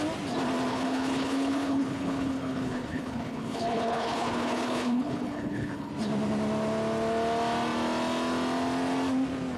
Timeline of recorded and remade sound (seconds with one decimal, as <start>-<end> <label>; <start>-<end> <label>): 0.0-0.7 recorded; 0.7-5.9 remade; 5.9-9.6 recorded